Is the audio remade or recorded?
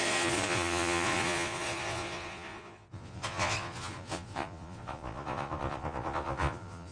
remade